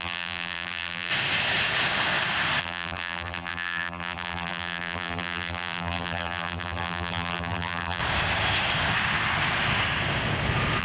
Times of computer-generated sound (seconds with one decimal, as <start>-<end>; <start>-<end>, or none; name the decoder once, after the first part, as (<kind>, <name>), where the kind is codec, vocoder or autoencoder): 0.0-1.1 (vocoder, BigVGAN v2); 2.6-8.0